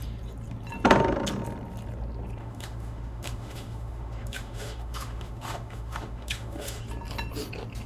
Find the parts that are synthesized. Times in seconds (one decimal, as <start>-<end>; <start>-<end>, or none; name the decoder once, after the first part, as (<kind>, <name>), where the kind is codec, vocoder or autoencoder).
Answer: 2.4-6.8 (autoencoder, DAC-VAE)